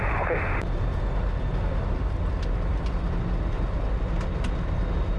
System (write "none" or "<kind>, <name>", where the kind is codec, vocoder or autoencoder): none